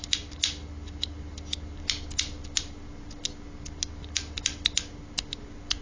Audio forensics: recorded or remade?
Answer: recorded